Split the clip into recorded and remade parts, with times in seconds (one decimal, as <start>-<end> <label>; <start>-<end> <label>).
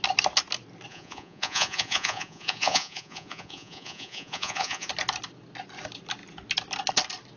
0.0-0.9 recorded; 0.9-4.9 remade; 4.9-7.4 recorded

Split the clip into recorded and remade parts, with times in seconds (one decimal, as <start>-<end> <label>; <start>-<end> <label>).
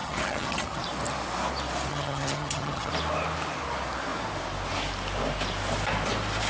0.0-0.8 remade; 0.8-1.9 recorded; 1.9-2.9 remade; 2.9-6.5 recorded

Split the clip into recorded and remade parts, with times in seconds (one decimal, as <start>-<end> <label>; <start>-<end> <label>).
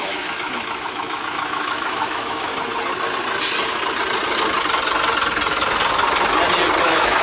0.0-2.5 remade; 2.5-6.8 recorded; 6.8-7.2 remade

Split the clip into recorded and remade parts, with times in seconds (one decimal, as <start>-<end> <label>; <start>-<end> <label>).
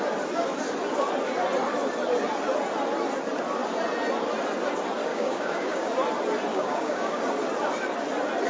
0.0-5.1 recorded; 5.1-5.9 remade; 5.9-6.5 recorded; 6.5-7.2 remade; 7.2-8.5 recorded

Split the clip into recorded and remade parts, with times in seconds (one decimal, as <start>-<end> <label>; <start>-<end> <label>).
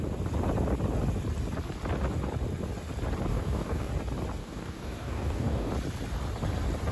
0.0-3.3 recorded; 3.3-3.9 remade; 3.9-4.4 recorded; 4.4-5.7 remade; 5.7-6.9 recorded